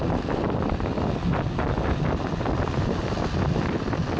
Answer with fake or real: real